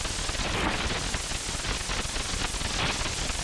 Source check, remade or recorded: recorded